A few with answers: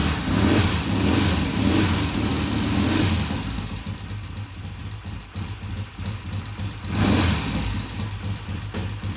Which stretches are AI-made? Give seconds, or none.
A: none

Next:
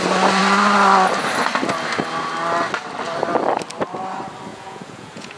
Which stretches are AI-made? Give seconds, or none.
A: 4.5-5.4 (vocoder, Vocos)

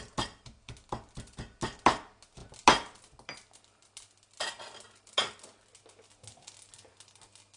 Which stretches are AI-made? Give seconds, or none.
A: none

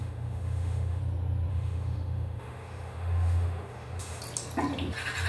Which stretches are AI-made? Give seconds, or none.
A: 0.0-1.0 (autoencoder, DAC-VAE); 1.5-4.2

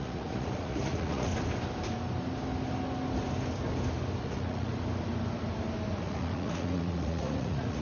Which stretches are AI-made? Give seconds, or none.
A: 0.0-1.3 (vocoder, Vocos); 4.2-4.7; 6.0-7.8

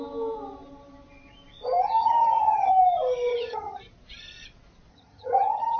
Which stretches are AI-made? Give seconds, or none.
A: 2.0-2.7 (vocoder, HiFi-GAN); 3.3-3.8; 4.9-5.8

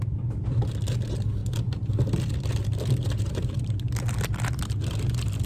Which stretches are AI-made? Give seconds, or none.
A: none